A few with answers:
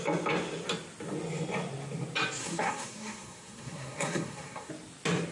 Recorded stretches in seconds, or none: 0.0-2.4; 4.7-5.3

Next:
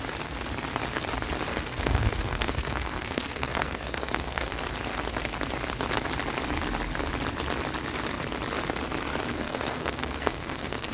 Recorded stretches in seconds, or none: 0.0-1.5; 4.6-9.3